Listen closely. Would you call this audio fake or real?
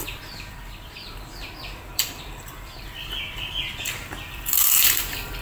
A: fake